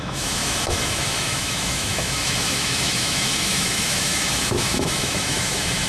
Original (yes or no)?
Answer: no